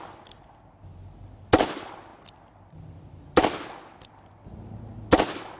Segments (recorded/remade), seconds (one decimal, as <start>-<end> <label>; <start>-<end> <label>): 0.0-5.6 recorded